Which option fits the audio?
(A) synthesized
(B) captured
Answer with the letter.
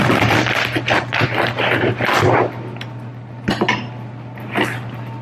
B